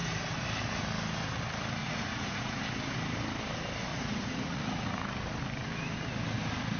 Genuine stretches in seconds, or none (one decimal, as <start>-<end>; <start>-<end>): 0.0-1.8; 2.6-3.9; 5.1-6.8